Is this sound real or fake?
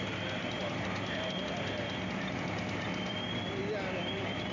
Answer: real